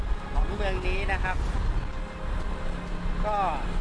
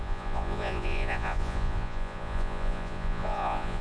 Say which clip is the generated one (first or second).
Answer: second